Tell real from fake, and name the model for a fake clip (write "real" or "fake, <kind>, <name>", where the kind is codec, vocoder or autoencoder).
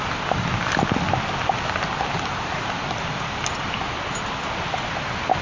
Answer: real